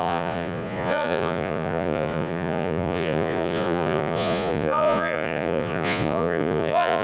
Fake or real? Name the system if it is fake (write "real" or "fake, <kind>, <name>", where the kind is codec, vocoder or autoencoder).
fake, vocoder, Vocos